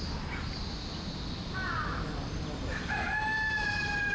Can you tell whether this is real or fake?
real